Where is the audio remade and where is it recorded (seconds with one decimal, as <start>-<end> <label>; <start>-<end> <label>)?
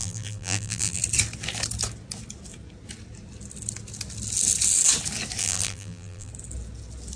0.0-1.0 remade; 1.0-5.4 recorded; 5.4-6.3 remade; 6.3-7.2 recorded